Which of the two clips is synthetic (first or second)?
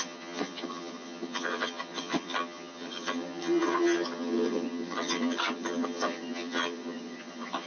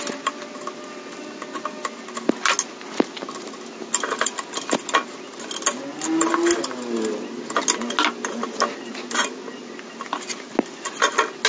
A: first